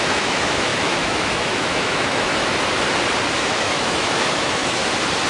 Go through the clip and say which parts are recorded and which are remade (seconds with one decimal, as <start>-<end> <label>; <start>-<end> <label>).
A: 0.0-2.3 remade; 2.3-3.4 recorded; 3.4-4.8 remade; 4.8-5.3 recorded